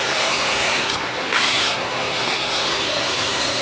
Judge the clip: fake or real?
fake